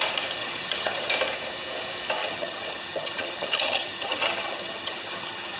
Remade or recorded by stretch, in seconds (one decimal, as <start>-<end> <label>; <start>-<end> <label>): 0.0-0.4 recorded; 0.4-1.1 remade; 1.1-2.2 recorded; 2.2-5.6 remade